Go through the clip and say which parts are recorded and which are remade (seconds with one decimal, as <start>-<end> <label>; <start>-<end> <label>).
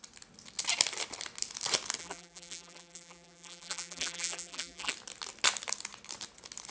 0.0-2.0 recorded; 2.0-4.9 remade; 4.9-6.7 recorded